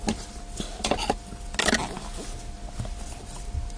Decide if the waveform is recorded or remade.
recorded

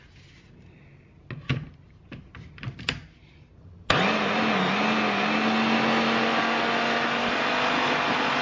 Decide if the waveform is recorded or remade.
recorded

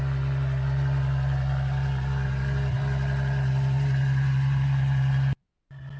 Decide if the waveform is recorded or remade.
recorded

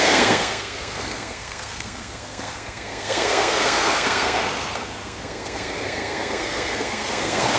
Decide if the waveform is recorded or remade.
remade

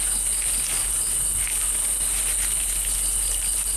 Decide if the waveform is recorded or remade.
recorded